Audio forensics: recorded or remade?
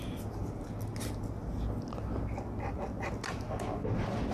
recorded